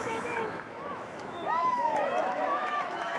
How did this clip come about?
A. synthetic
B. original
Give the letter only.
A